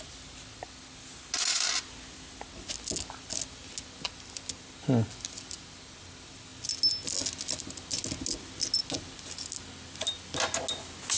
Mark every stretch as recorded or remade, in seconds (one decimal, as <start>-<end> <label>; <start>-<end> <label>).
0.0-11.2 recorded